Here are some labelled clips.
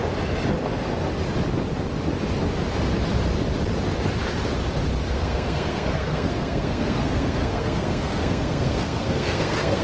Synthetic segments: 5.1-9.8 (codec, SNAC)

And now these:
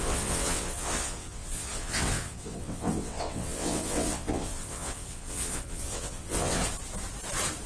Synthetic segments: 0.0-6.6 (vocoder, WaveNeXt)

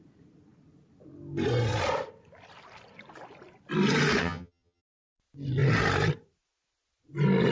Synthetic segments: 4.2-4.8 (vocoder, HiFi-GAN)

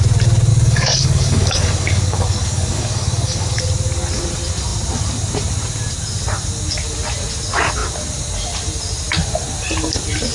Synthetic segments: 0.5-3.6 (codec, DAC)

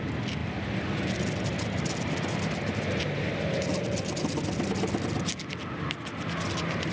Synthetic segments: none

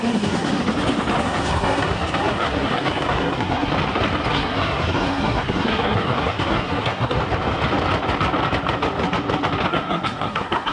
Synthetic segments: 0.0-0.6 (codec, SNAC); 1.2-3.7; 4.3-7.2; 9.7-10.7

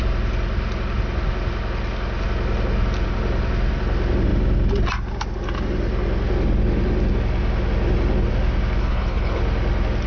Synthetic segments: 8.8-9.4 (codec, HILCodec)

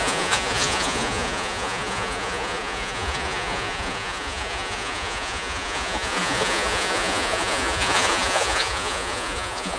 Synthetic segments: 0.0-9.8 (vocoder, Vocos)